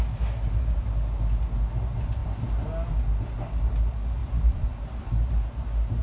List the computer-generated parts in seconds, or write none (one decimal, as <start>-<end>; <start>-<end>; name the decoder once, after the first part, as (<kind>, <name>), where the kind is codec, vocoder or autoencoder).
4.2-5.1 (vocoder, BigVGAN v2)